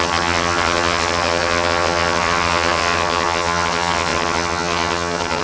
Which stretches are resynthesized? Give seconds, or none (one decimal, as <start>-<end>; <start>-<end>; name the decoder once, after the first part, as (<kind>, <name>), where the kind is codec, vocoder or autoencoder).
0.0-5.4 (vocoder, HiFi-GAN)